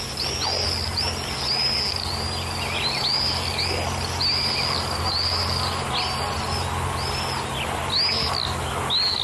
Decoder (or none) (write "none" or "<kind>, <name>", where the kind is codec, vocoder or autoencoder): none